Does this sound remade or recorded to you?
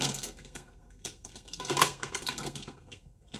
remade